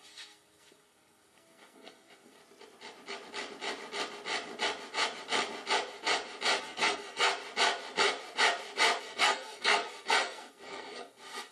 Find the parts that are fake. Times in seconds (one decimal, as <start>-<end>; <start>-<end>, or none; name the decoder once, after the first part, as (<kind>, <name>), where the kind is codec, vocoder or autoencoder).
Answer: 0.0-2.4 (codec, SNAC); 6.6-7.3; 9.0-11.5